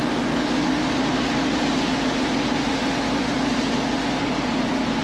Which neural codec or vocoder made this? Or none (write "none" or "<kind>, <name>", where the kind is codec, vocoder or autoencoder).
none